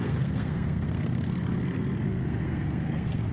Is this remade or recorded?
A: remade